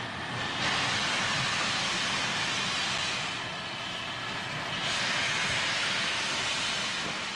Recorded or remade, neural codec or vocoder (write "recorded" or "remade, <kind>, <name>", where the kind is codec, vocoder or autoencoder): recorded